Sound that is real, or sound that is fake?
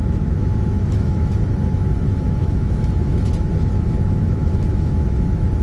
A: fake